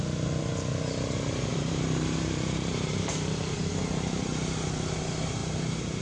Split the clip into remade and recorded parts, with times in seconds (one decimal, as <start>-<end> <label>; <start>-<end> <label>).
0.0-1.5 recorded; 1.5-3.7 remade; 3.7-6.0 recorded